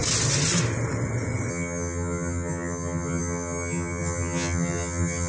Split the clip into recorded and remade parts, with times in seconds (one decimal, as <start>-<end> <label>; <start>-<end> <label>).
0.0-1.5 recorded; 1.5-5.3 remade